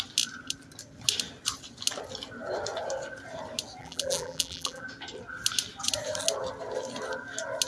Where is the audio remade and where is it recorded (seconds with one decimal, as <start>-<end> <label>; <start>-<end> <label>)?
0.0-3.8 recorded; 3.8-4.8 remade; 4.8-7.7 recorded